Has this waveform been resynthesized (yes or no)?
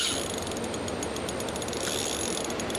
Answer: no